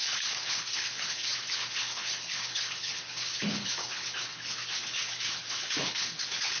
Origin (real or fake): fake